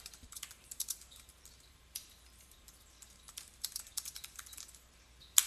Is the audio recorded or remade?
remade